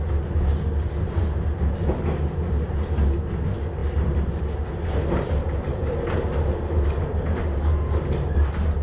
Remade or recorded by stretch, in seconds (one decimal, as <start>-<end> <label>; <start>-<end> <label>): 0.0-3.8 recorded; 3.8-6.3 remade; 6.3-8.8 recorded